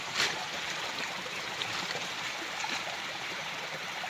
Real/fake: fake